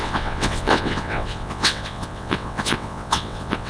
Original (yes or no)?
no